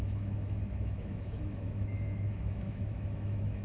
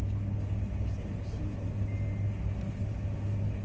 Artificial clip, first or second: first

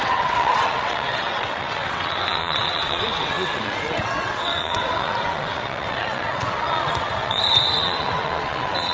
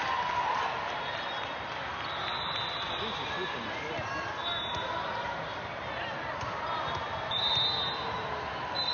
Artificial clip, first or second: first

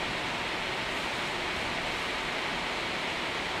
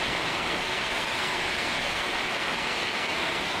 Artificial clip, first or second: second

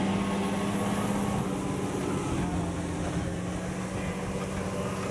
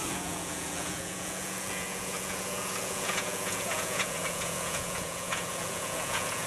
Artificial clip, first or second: second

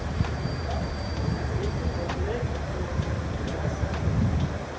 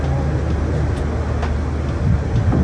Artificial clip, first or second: first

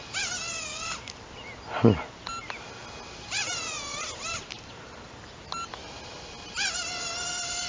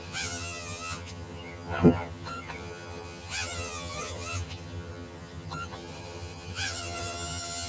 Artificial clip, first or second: second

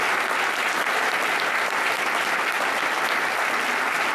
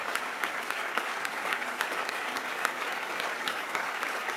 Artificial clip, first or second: second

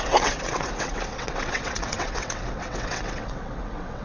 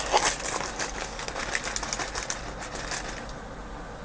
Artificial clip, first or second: first